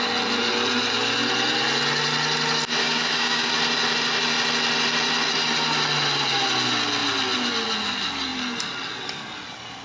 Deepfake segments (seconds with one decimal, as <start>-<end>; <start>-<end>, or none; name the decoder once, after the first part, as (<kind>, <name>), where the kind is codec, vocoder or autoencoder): 2.8-3.5 (codec, DAC)